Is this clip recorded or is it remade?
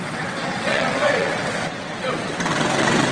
remade